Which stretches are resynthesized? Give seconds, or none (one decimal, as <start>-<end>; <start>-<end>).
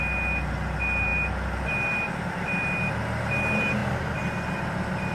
none